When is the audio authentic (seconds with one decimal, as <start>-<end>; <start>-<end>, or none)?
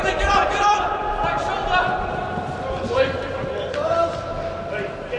1.0-3.3